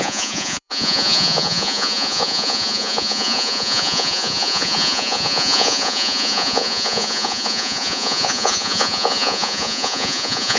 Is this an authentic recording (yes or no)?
no